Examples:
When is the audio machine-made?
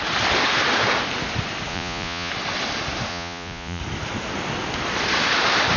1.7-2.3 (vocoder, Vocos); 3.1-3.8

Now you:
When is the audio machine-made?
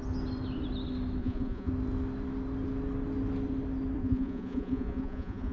1.2-1.7 (vocoder, Vocos); 4.0-5.5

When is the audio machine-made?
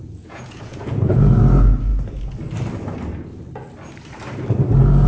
0.0-1.2 (vocoder, Vocos)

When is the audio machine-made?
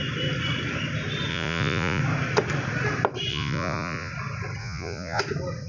1.3-2.0 (vocoder, Vocos); 3.3-4.1; 4.6-5.2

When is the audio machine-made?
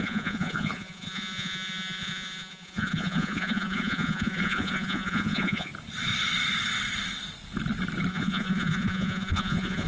0.0-5.7 (vocoder, Vocos); 8.1-9.9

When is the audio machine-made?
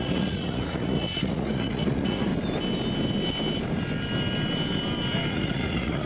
0.0-2.3 (vocoder, Vocos); 5.3-6.1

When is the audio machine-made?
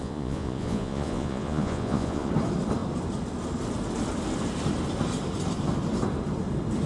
0.0-2.3 (vocoder, Vocos)